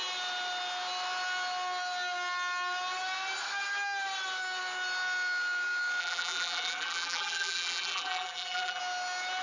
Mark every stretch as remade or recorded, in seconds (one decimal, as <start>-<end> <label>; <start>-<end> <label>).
0.0-6.0 recorded; 6.0-8.8 remade; 8.8-9.4 recorded